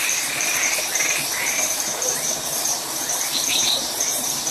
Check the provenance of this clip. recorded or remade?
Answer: remade